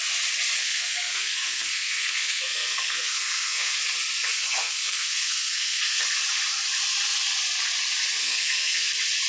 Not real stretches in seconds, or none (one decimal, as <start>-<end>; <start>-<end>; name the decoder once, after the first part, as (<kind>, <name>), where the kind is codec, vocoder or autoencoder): 0.6-3.8 (codec, SNAC); 4.3-6.0; 8.2-8.9